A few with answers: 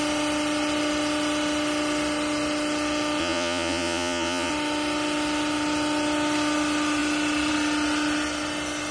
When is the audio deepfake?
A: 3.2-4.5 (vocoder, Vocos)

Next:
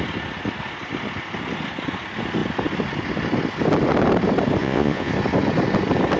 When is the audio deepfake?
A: 4.6-5.1 (vocoder, Vocos)

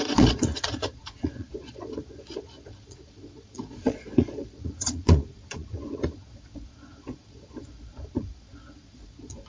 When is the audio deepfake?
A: 0.0-9.5 (vocoder, Vocos)

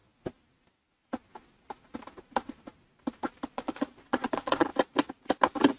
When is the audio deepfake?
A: 3.5-4.7 (vocoder, Vocos)